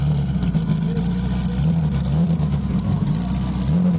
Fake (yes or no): no